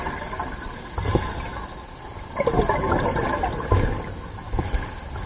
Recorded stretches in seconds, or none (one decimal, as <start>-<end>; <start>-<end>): 0.0-5.3